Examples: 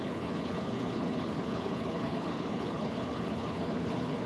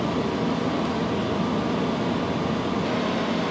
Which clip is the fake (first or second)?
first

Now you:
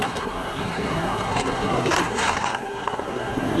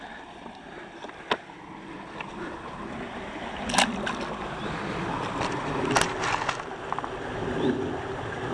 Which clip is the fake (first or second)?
first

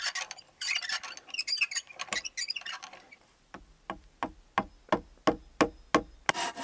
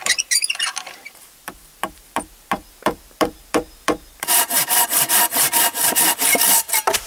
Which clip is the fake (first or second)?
second